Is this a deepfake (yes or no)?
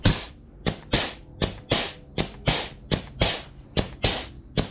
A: no